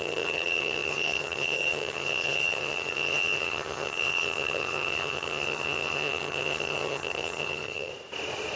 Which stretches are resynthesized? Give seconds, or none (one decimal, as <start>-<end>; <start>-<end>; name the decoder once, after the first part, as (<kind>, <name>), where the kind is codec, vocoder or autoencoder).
0.0-7.9 (vocoder, HiFi-GAN)